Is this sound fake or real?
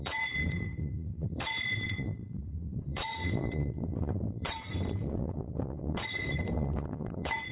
fake